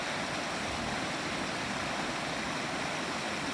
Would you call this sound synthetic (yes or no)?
no